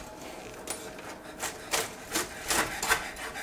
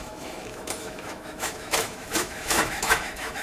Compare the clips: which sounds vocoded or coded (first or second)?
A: second